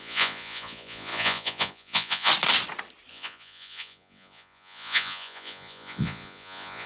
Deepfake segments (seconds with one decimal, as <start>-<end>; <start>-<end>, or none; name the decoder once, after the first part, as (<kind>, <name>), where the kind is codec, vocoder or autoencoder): 0.0-2.3 (vocoder, Vocos); 3.1-6.9